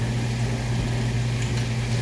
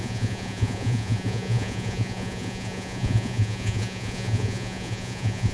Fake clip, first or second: second